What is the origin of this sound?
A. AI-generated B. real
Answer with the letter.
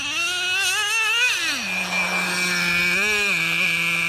B